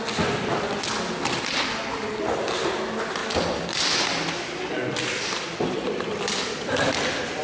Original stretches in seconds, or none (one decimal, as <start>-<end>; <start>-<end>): 0.0-7.4